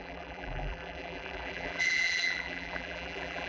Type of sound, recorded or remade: remade